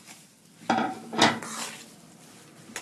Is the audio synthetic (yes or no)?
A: no